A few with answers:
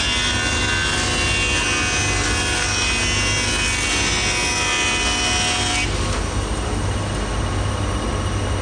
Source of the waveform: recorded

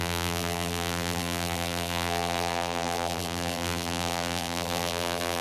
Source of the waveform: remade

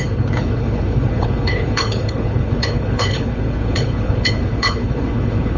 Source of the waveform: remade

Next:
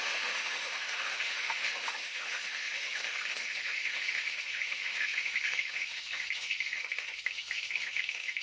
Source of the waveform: remade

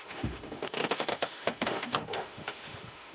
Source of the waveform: remade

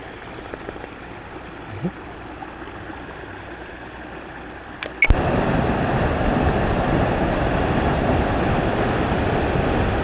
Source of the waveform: recorded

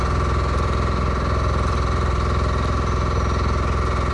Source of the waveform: recorded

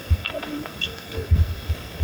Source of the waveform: remade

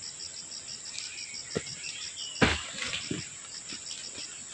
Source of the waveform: recorded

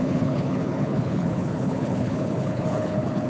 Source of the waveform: remade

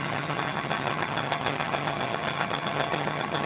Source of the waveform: remade